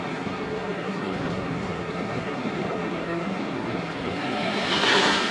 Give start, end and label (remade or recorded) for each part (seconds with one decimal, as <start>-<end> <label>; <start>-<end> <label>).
0.0-5.3 remade